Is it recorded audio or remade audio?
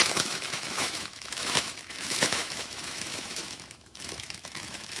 remade